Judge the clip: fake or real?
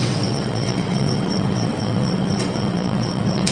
fake